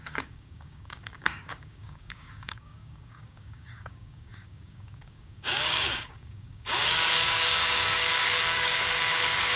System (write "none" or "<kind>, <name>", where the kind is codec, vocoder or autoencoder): codec, DAC